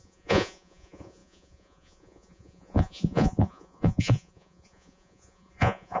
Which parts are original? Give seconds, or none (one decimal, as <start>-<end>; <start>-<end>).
none